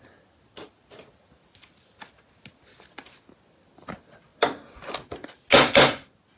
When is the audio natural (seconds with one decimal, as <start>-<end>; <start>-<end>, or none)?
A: 0.0-6.4